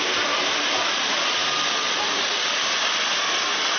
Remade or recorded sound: recorded